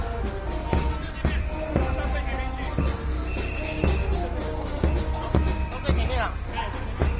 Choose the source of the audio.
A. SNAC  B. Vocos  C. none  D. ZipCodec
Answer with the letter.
C